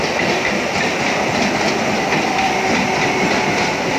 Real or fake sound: real